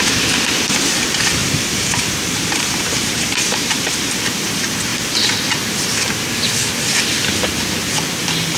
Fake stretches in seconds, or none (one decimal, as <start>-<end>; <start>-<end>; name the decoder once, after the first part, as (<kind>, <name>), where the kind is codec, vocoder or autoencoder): 1.4-4.2 (vocoder, BigVGAN v2)